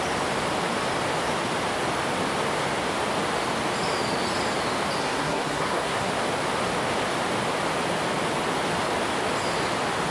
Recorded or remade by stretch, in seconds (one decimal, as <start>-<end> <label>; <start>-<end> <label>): 0.0-5.0 recorded; 5.0-6.1 remade; 6.1-10.1 recorded